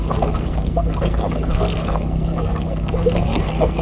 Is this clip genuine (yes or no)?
no